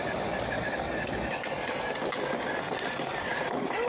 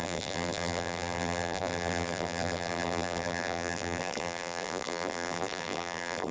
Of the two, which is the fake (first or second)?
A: second